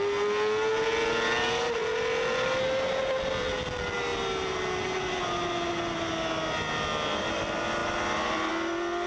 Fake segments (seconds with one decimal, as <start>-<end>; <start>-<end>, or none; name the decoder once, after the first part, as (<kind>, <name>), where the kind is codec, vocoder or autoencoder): none